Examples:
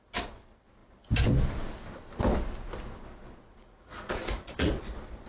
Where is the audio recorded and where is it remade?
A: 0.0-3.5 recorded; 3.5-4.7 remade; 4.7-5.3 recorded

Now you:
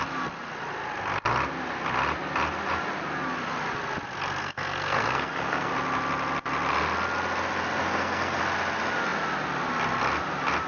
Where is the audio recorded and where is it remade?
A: 0.0-4.4 recorded; 4.4-5.7 remade; 5.7-7.8 recorded; 7.8-8.4 remade; 8.4-10.7 recorded

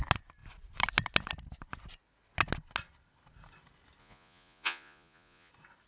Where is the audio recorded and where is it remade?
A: 0.0-4.0 recorded; 4.0-5.5 remade; 5.5-5.9 recorded